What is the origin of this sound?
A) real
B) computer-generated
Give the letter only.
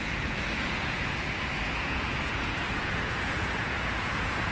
B